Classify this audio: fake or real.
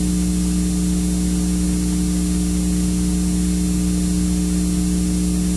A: real